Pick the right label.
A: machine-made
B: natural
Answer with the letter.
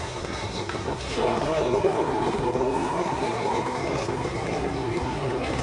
A